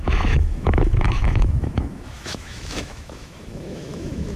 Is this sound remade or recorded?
remade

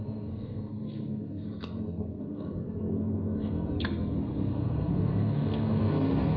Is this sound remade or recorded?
remade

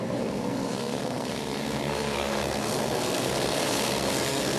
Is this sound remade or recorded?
remade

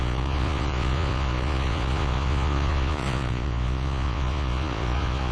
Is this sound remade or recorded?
remade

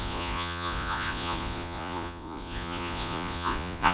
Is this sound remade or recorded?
remade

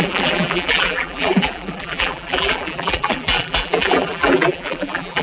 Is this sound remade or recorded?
remade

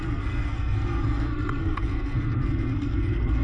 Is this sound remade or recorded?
remade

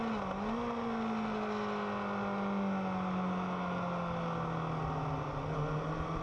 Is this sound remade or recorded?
recorded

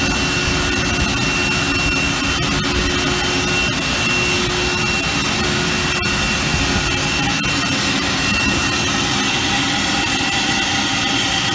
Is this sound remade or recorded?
recorded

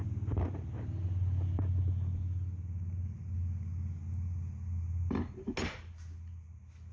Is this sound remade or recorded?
recorded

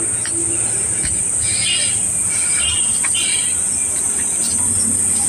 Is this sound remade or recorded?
recorded